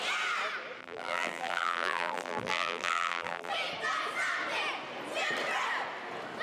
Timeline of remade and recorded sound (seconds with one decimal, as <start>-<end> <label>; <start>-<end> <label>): 0.0-0.8 recorded; 0.8-3.5 remade; 3.5-6.4 recorded